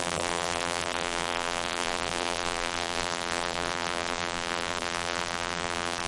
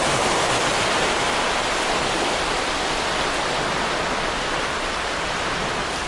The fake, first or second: first